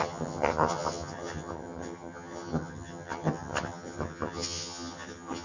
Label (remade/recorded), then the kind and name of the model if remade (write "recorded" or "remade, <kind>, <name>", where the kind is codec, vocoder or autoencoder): remade, vocoder, HiFi-GAN